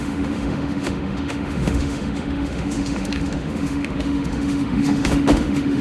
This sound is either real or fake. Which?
fake